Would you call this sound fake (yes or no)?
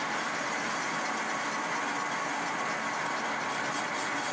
no